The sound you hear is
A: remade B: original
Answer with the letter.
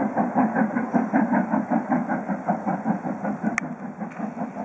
B